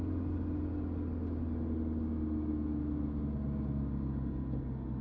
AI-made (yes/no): no